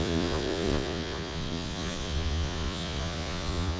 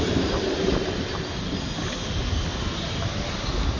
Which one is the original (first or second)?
second